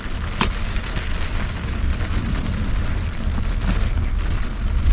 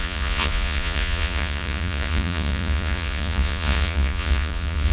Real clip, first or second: first